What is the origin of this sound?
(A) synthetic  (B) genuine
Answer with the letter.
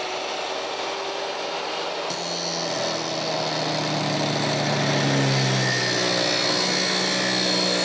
B